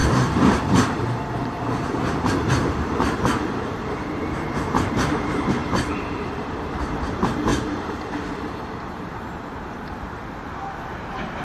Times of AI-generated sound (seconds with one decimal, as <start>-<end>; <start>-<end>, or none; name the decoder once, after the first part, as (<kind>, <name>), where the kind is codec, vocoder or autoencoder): 0.0-11.4 (vocoder, BigVGAN v2)